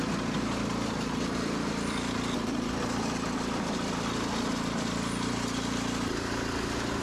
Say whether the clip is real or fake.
fake